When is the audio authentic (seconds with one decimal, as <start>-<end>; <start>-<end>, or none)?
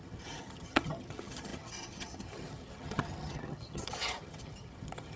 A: none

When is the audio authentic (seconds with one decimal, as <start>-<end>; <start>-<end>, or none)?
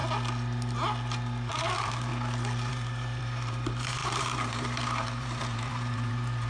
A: 0.0-1.5; 2.1-2.7